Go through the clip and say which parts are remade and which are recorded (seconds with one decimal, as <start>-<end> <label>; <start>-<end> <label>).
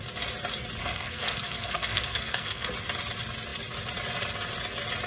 0.0-0.8 recorded; 0.8-2.7 remade; 2.7-5.1 recorded